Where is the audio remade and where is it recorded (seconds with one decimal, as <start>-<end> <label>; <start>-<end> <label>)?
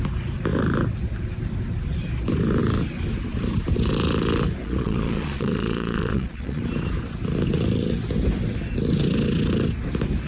0.0-4.6 recorded; 4.6-6.6 remade; 6.6-10.3 recorded